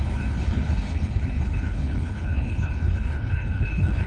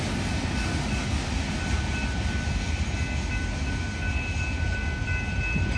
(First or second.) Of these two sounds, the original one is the second